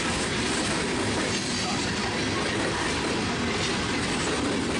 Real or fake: real